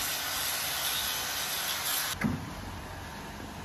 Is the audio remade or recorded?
recorded